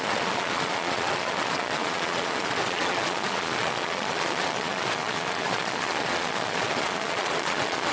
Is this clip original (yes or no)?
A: no